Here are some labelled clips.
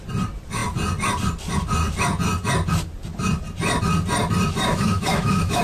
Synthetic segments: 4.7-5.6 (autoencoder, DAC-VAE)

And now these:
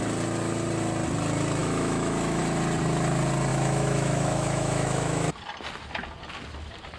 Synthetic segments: 1.6-2.4 (autoencoder, DAC-VAE); 3.5-5.3

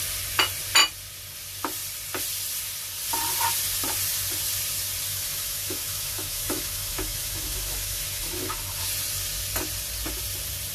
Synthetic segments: 5.1-8.8 (autoencoder, DAC-VAE)

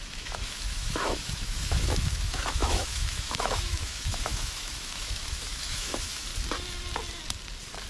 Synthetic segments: 0.0-6.3 (autoencoder, DAC-VAE)

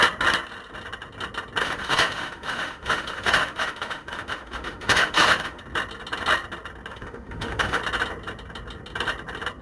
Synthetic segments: 1.6-5.6 (autoencoder, DAC-VAE); 6.9-7.8